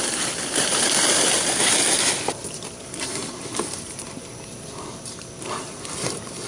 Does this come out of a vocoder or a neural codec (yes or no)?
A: yes